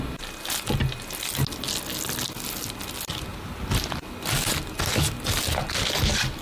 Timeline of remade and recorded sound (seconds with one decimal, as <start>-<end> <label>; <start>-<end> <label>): 0.0-6.4 recorded